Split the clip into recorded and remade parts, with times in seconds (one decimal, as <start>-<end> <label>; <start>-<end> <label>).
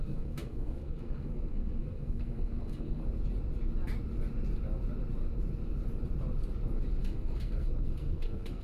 0.0-3.0 remade; 3.0-7.0 recorded; 7.0-8.6 remade